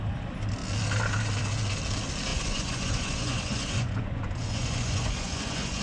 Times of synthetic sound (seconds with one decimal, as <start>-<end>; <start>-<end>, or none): 2.3-5.8